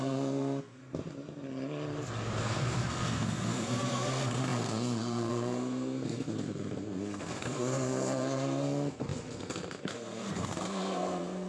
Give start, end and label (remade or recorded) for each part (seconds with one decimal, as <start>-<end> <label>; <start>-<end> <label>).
0.0-0.8 remade; 0.8-2.4 recorded; 2.4-11.5 remade